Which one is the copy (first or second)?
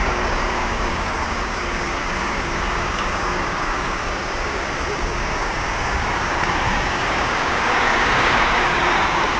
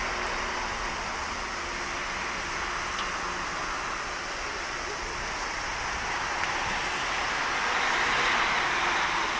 first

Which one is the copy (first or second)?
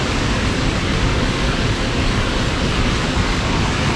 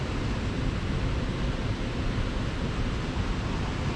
first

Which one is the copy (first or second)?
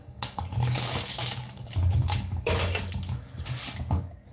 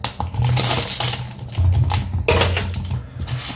first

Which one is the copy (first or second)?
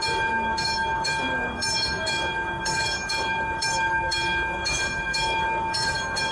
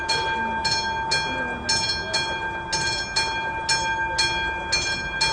first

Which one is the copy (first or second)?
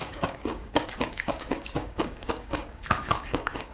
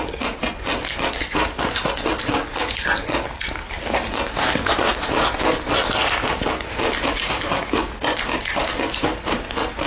first